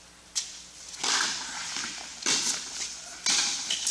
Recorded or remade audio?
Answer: recorded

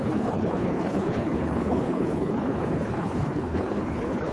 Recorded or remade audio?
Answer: remade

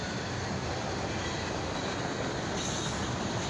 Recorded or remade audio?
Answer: recorded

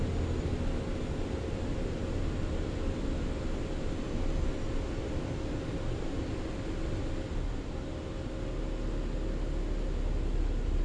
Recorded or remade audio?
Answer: recorded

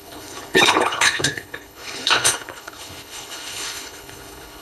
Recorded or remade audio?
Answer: remade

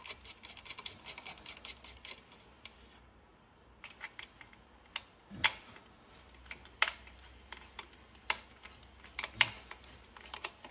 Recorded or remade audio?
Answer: recorded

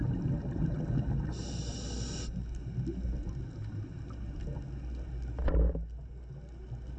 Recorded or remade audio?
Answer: recorded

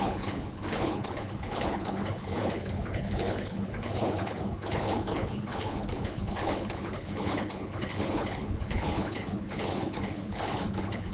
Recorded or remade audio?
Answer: remade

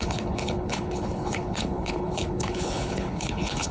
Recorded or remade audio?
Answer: remade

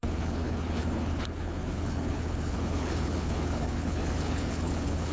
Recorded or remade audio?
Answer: remade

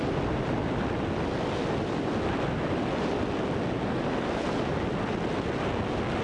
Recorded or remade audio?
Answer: recorded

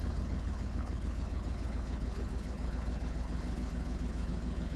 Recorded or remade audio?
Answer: remade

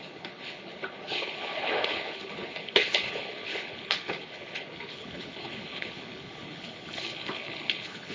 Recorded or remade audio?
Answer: remade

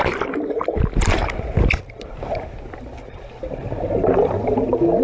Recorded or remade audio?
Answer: recorded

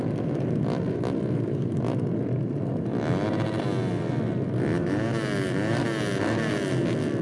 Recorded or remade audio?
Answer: recorded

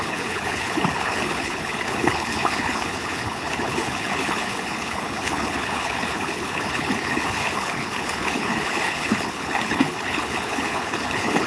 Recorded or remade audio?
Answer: remade